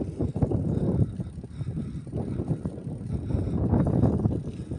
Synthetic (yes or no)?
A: no